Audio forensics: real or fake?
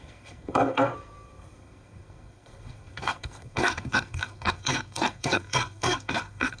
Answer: fake